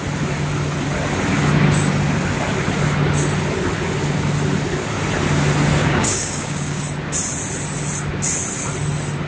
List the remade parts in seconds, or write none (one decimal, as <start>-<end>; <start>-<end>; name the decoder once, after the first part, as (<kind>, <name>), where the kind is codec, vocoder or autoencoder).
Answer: 5.8-6.8 (codec, DAC)